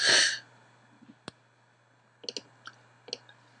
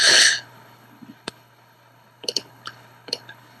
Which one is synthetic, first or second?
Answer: second